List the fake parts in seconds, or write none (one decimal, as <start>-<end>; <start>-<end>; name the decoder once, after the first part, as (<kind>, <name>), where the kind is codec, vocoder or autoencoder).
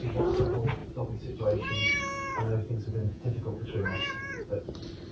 2.9-4.1 (vocoder, Vocos)